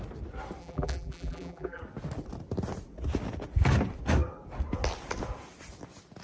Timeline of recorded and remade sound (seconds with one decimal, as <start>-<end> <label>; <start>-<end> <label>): 0.0-0.6 recorded; 0.6-1.8 remade; 1.8-6.2 recorded

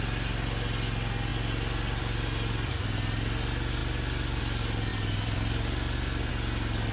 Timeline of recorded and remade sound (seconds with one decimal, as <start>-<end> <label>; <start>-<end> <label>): 0.0-3.8 recorded; 3.8-4.4 remade; 4.4-4.9 recorded; 4.9-6.3 remade; 6.3-6.9 recorded

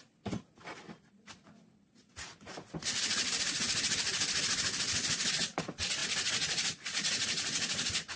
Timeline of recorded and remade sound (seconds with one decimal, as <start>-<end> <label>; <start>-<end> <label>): 0.0-8.2 recorded

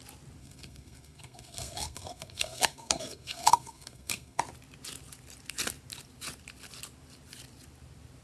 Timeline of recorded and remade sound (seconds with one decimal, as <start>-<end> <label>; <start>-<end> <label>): 0.0-0.4 recorded; 0.4-4.4 remade; 4.4-8.2 recorded